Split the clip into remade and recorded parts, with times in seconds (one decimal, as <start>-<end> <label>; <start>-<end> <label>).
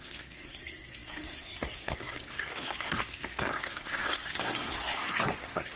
0.0-5.8 remade